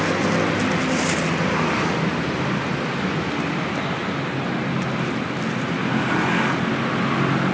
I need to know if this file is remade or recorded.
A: recorded